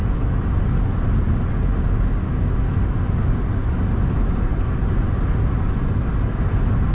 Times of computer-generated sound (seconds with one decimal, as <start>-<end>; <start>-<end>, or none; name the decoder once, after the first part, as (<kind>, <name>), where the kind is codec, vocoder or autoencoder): 2.2-3.0 (autoencoder, DAC-VAE)